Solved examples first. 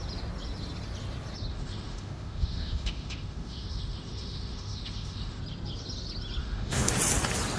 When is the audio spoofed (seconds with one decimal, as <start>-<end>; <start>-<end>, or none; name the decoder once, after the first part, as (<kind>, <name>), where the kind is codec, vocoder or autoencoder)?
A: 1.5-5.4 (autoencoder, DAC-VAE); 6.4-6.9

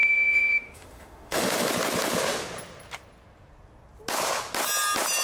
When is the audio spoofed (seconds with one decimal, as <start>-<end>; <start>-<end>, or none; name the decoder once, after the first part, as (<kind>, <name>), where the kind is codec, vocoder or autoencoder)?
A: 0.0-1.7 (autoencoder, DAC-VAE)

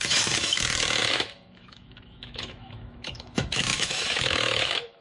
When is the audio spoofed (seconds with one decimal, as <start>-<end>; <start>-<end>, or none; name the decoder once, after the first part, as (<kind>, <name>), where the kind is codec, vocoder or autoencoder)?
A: 0.0-5.0 (autoencoder, DAC-VAE)

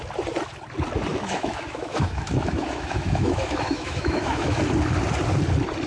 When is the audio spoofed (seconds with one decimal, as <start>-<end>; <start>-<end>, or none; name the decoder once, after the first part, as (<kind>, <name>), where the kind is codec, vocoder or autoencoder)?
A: 1.1-4.6 (autoencoder, DAC-VAE)

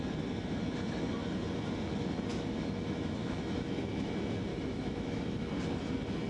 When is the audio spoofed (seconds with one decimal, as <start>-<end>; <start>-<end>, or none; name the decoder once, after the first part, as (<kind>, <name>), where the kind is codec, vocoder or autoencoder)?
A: 2.3-4.1 (autoencoder, DAC-VAE); 4.5-5.5

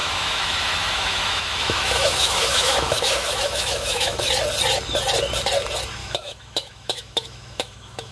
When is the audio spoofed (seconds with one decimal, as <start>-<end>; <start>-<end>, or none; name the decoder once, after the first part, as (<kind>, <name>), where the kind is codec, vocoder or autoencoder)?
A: 0.0-4.3 (autoencoder, DAC-VAE); 6.0-8.1